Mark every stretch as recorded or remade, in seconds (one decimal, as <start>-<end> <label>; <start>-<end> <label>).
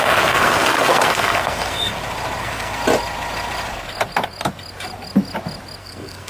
0.0-1.9 remade; 1.9-2.4 recorded; 2.4-2.8 remade; 2.8-5.8 recorded; 5.8-6.3 remade